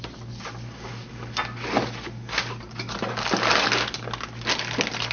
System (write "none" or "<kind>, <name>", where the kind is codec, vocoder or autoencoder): none